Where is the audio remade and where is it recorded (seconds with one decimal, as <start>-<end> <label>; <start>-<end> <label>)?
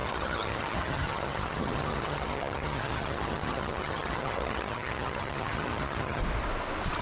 0.0-6.2 remade; 6.2-7.0 recorded